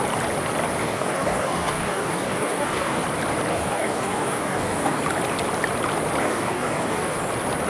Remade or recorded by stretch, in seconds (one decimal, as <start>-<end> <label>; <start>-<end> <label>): 0.0-0.8 recorded; 0.8-3.0 remade; 3.0-3.5 recorded; 3.5-5.0 remade; 5.0-6.2 recorded; 6.2-7.2 remade; 7.2-7.7 recorded